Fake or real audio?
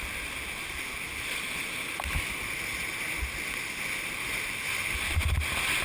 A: real